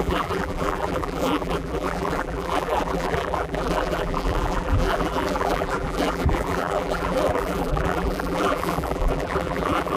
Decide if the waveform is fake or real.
fake